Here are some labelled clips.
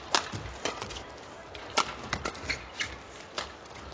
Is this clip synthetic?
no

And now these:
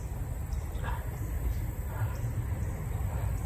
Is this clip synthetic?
no